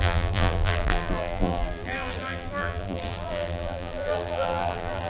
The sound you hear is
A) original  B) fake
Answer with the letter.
B